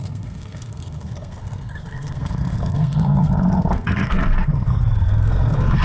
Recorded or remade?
remade